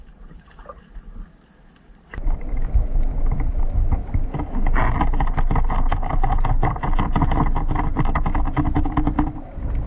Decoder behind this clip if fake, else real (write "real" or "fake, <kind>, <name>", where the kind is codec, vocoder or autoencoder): real